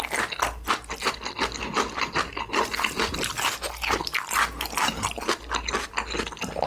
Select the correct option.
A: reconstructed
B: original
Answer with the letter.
B